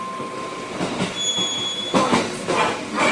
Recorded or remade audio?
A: recorded